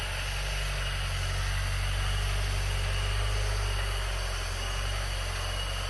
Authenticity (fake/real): real